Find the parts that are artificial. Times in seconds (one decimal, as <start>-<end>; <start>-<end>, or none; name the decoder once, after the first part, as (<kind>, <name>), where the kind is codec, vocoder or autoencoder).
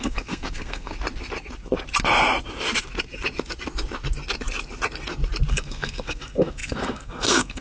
0.0-0.9 (codec, SNAC); 5.5-7.6